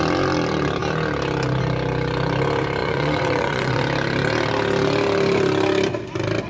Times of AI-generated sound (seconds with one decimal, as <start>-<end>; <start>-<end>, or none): 2.8-3.8